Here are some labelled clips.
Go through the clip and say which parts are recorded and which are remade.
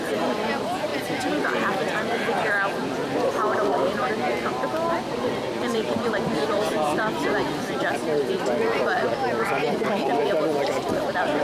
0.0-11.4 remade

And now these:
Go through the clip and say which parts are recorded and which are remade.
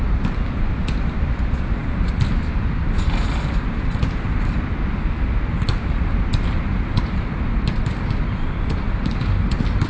0.0-4.8 remade; 4.8-6.5 recorded; 6.5-9.9 remade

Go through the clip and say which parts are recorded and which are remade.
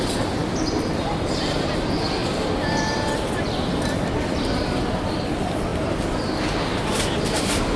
0.0-2.2 remade; 2.2-4.0 recorded; 4.0-5.7 remade; 5.7-6.8 recorded; 6.8-7.8 remade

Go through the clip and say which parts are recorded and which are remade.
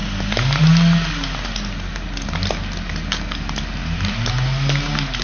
0.0-3.8 recorded; 3.8-4.3 remade; 4.3-5.2 recorded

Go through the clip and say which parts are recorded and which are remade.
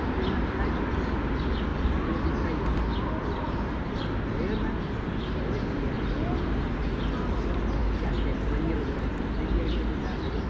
0.0-10.5 recorded